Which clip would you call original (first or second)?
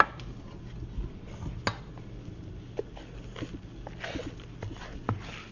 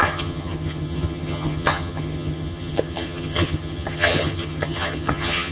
first